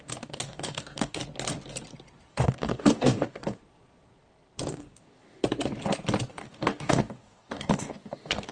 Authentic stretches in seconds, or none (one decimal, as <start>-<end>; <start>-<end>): 1.2-2.3; 3.6-4.7; 5.4-6.3